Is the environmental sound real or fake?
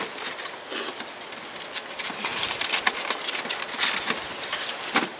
real